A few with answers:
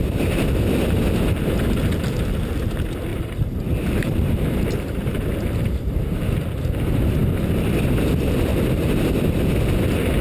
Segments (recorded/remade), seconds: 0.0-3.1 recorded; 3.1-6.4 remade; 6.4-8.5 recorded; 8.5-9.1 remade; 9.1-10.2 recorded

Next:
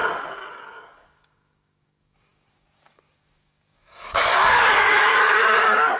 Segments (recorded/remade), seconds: 0.0-0.5 recorded; 0.5-6.0 remade

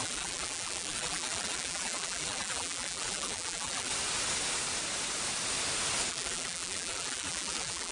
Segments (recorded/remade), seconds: 0.0-3.9 remade; 3.9-6.1 recorded; 6.1-7.9 remade

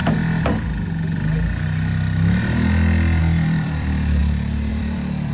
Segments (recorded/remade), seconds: 0.0-3.2 recorded; 3.2-4.2 remade; 4.2-4.7 recorded; 4.7-5.3 remade

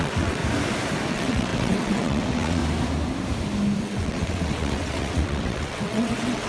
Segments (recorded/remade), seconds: 0.0-0.4 remade; 0.4-1.1 recorded; 1.1-2.6 remade; 2.6-3.8 recorded; 3.8-6.5 remade

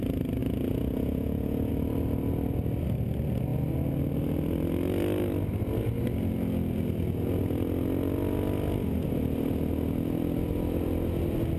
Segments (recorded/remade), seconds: 0.0-0.4 recorded; 0.4-1.7 remade; 1.7-11.6 recorded

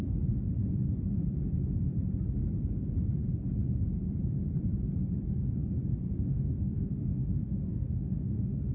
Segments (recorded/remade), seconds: 0.0-6.3 recorded; 6.3-8.7 remade